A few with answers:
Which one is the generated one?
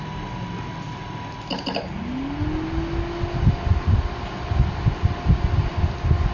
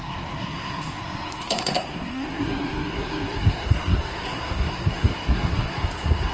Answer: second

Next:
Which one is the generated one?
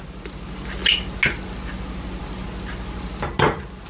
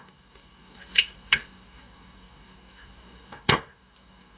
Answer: second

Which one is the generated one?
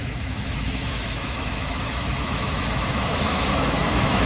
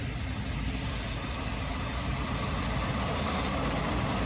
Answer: first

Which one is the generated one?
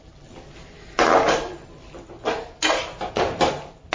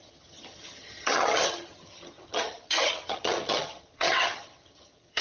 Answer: second